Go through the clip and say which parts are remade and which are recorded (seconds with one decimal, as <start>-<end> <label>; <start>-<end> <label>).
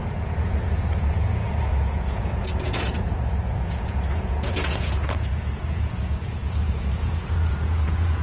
0.0-8.2 remade